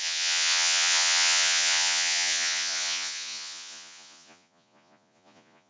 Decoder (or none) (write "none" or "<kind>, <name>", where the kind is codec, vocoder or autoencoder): vocoder, Vocos